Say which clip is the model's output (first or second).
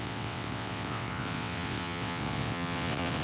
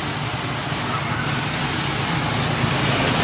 first